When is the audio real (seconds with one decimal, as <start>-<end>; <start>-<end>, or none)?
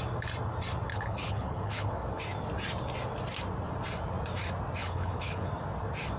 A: 0.0-0.9; 1.9-4.8; 5.5-6.2